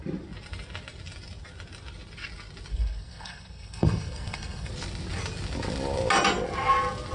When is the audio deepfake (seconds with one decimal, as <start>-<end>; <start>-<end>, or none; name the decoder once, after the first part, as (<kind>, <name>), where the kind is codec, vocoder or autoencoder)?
2.7-4.7 (codec, SNAC)